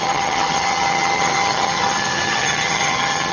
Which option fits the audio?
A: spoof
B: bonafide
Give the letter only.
A